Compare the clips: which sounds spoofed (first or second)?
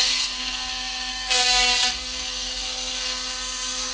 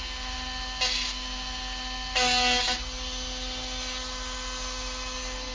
first